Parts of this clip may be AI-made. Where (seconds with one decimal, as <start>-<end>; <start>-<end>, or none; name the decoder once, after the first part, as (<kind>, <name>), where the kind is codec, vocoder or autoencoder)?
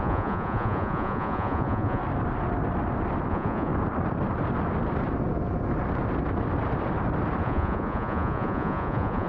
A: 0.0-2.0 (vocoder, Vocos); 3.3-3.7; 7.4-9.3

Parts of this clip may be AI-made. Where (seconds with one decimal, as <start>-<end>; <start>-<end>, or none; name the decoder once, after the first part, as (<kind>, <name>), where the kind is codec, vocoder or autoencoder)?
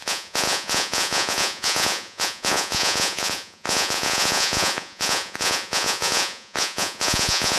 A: 0.0-7.6 (vocoder, Vocos)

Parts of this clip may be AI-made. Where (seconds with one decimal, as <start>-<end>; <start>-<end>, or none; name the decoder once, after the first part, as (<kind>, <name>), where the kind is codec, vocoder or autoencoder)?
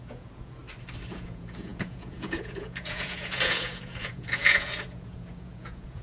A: 0.0-0.6 (vocoder, Vocos); 1.1-6.0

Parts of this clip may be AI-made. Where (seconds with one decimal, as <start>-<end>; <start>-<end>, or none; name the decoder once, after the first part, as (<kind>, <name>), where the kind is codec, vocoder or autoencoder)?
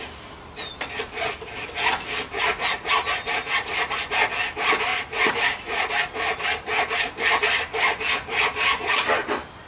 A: 4.9-5.9 (vocoder, Vocos)